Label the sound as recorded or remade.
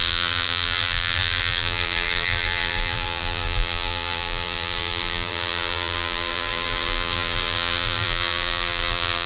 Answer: remade